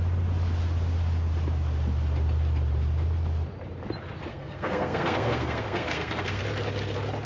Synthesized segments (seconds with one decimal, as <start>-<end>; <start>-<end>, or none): 4.3-6.4